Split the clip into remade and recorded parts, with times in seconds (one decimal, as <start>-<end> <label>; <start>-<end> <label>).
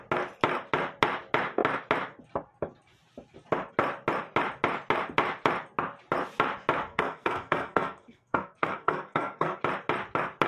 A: 0.0-6.9 recorded; 6.9-9.6 remade; 9.6-10.5 recorded